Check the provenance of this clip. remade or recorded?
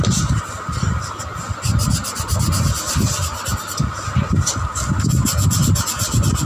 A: recorded